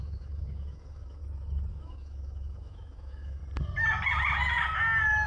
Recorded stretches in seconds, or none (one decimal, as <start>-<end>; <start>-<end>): 1.2-1.7; 3.4-5.3